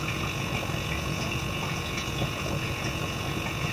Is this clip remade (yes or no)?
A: yes